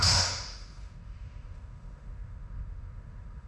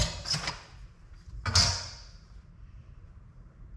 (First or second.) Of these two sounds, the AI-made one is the first